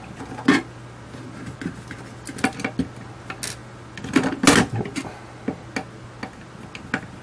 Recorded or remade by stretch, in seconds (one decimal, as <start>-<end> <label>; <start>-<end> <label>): 0.0-7.2 recorded